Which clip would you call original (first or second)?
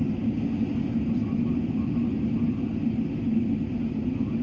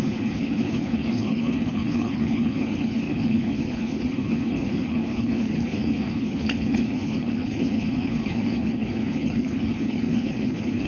first